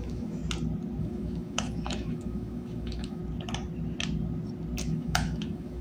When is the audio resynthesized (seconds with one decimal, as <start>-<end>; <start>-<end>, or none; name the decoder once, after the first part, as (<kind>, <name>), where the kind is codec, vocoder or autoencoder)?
0.0-0.4 (autoencoder, DAC-VAE); 1.0-3.2; 4.8-5.8